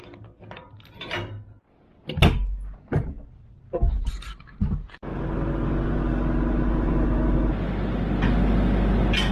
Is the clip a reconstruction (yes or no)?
no